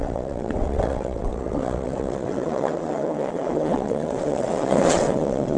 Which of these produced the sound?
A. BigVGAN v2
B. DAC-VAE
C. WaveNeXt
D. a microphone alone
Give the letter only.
C